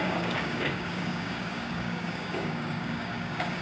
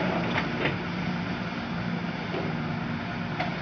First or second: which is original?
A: second